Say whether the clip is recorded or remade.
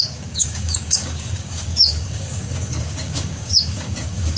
remade